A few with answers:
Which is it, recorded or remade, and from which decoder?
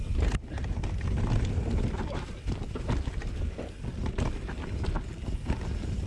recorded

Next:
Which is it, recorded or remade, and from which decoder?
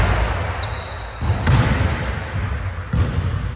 recorded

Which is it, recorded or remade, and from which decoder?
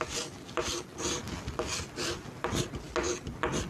recorded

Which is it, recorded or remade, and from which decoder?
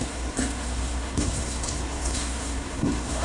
remade, codec, SNAC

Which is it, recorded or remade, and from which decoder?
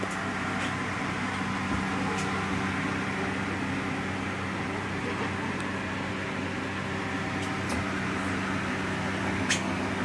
recorded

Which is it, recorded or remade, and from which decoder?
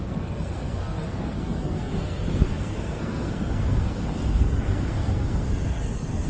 remade, codec, SNAC